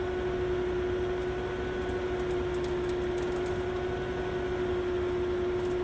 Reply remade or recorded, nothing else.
recorded